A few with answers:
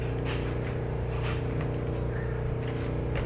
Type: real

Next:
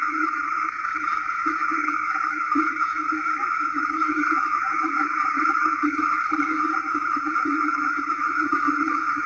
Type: fake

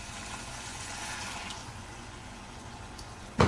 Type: fake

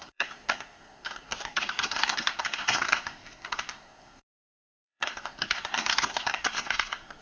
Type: fake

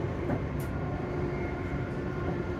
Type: fake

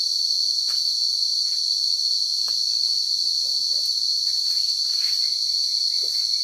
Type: real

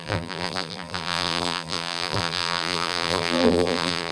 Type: fake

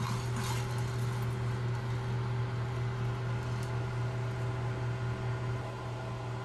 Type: real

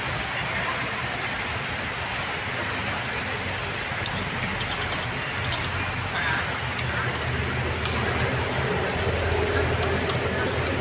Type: real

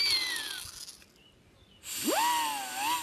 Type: real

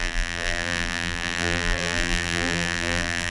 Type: fake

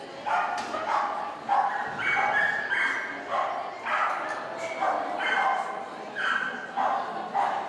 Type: real